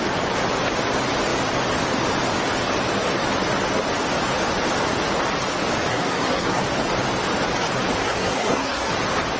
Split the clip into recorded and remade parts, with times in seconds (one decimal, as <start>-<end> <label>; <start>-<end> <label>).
0.0-5.9 recorded; 5.9-6.6 remade; 6.6-8.0 recorded; 8.0-8.9 remade; 8.9-9.4 recorded